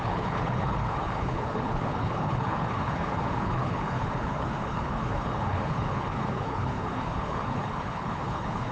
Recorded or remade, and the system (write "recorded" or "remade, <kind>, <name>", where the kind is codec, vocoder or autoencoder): remade, codec, HILCodec